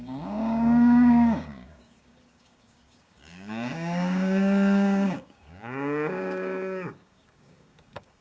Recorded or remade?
remade